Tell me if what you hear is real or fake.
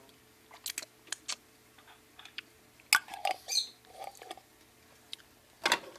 real